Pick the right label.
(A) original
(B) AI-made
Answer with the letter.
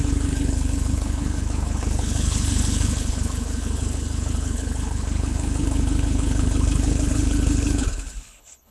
B